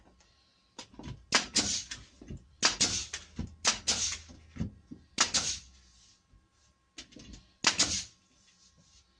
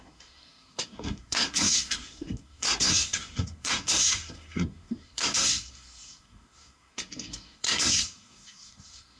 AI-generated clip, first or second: second